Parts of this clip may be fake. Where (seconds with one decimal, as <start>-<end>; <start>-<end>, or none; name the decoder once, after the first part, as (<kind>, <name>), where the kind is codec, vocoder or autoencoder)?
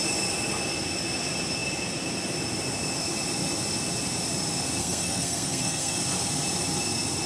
4.8-6.0 (codec, SNAC)